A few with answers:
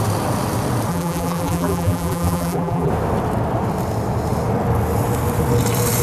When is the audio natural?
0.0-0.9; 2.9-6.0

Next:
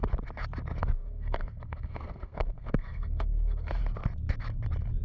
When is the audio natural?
0.0-0.8; 3.8-5.0

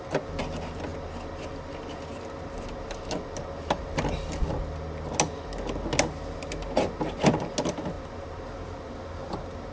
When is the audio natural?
0.0-9.7

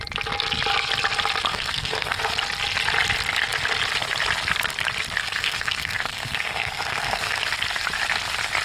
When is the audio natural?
0.0-1.5; 2.2-5.2; 7.4-8.6

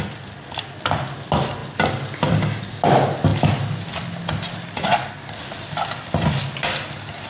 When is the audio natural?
0.0-1.6; 2.6-7.3

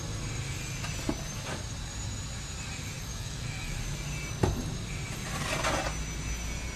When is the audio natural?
0.0-3.1; 3.8-6.8

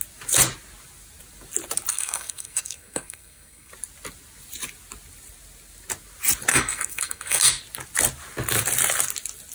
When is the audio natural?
0.0-1.9; 3.7-6.5; 7.6-9.5

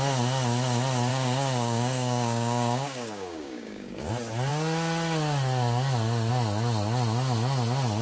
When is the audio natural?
0.0-1.1; 4.1-8.0